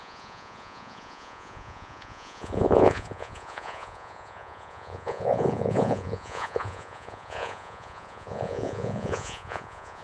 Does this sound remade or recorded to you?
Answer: remade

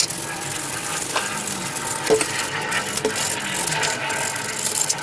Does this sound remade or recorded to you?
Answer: recorded